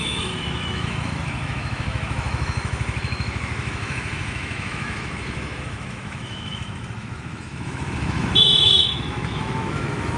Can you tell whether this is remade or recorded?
remade